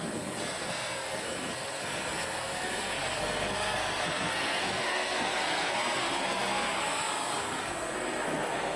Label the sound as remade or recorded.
remade